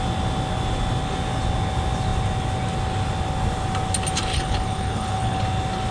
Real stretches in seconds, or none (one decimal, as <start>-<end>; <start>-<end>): 0.0-4.3; 5.4-5.9